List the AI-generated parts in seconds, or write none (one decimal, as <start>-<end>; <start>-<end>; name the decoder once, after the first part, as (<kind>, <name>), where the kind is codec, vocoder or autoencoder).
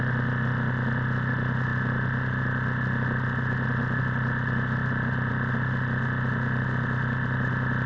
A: none